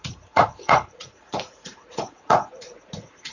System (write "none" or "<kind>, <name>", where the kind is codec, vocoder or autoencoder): vocoder, Vocos